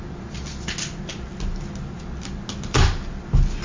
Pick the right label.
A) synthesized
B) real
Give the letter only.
B